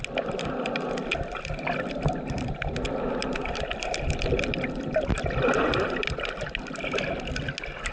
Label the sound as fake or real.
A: real